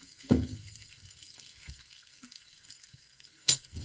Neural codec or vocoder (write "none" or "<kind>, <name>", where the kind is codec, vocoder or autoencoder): codec, SNAC